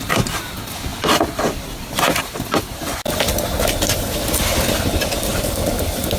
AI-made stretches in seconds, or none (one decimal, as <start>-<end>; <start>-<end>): none